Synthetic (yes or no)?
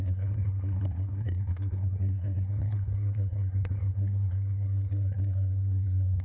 yes